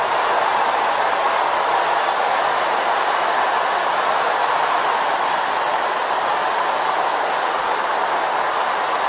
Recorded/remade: recorded